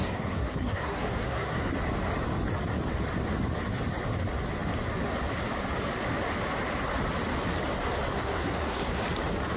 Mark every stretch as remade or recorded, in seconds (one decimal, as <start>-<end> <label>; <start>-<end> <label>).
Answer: 0.0-1.7 remade; 1.7-8.1 recorded; 8.1-9.0 remade; 9.0-9.6 recorded